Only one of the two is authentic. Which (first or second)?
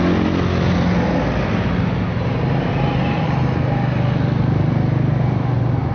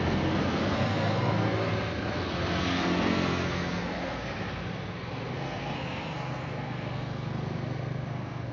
first